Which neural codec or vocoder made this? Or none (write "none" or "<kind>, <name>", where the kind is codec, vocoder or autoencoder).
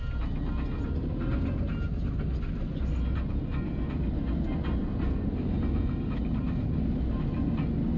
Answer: none